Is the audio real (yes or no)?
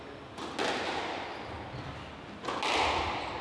yes